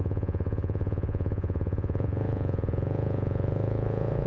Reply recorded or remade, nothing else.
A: remade